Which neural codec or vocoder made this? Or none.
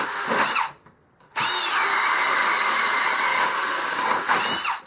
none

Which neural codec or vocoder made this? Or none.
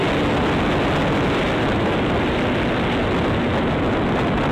none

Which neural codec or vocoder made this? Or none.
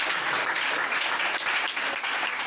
none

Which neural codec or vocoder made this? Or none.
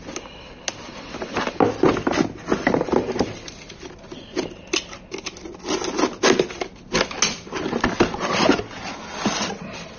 none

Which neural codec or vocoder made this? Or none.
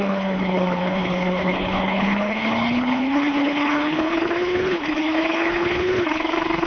codec, HILCodec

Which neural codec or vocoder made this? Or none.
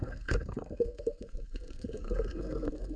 codec, SNAC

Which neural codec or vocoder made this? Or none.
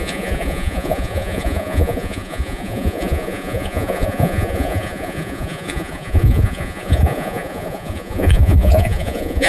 vocoder, Vocos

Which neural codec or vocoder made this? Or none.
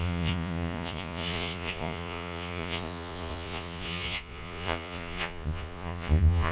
vocoder, Vocos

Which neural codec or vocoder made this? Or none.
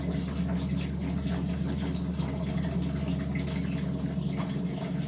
none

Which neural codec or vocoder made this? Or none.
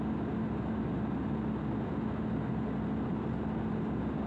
none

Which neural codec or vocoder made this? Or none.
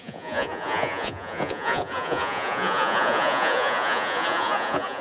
vocoder, Vocos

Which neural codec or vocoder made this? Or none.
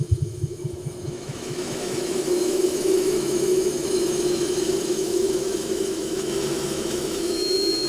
autoencoder, DAC-VAE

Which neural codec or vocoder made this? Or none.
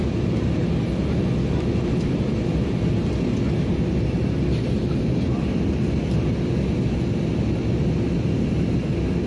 none